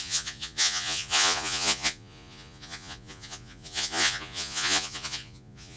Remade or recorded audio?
remade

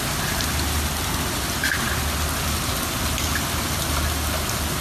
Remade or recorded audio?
recorded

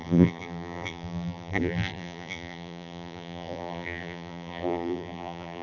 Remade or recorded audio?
remade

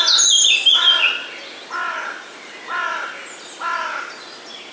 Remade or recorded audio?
recorded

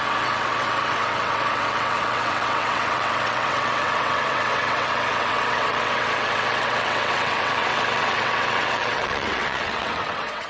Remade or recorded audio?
remade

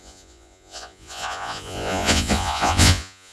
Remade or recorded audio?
remade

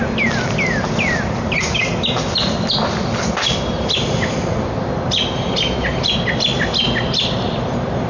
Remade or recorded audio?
recorded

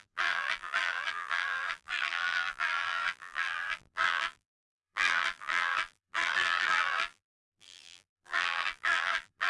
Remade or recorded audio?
remade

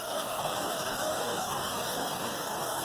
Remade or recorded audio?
remade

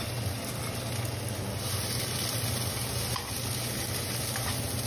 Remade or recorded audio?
recorded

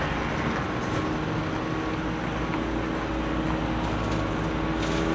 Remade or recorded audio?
recorded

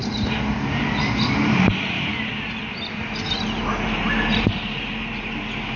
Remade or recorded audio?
recorded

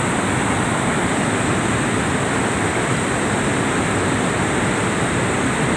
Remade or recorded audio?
recorded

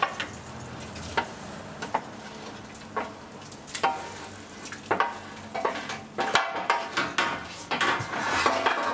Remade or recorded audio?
recorded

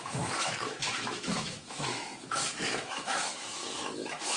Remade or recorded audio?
remade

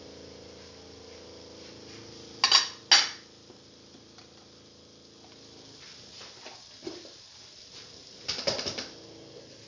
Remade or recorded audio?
recorded